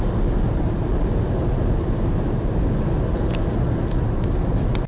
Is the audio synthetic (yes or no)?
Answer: no